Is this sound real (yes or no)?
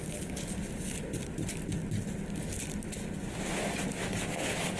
yes